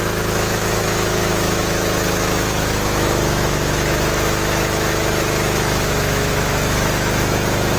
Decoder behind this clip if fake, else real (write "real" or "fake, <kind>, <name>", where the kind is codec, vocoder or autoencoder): fake, autoencoder, DAC-VAE